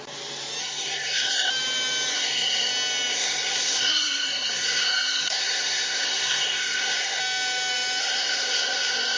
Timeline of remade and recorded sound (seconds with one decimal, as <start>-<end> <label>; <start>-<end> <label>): 0.0-0.6 recorded; 0.6-1.5 remade; 1.5-2.1 recorded; 2.1-2.7 remade; 2.7-3.1 recorded; 3.1-7.2 remade; 7.2-8.0 recorded; 8.0-9.2 remade